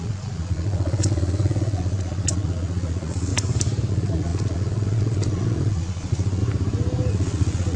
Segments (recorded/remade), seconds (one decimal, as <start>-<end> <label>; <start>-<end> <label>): 0.0-3.3 remade; 3.3-3.9 recorded; 3.9-6.4 remade; 6.4-7.1 recorded; 7.1-7.8 remade